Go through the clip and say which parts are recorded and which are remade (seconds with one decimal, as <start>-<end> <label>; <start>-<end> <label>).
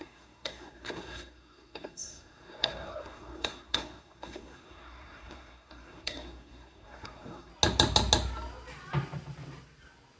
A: 0.0-7.5 remade; 7.5-10.2 recorded